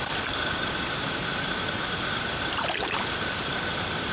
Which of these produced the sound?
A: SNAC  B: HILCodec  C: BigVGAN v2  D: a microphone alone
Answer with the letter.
C